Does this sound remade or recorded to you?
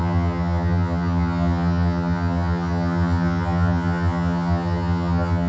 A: remade